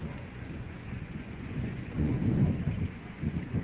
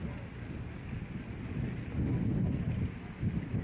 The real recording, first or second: second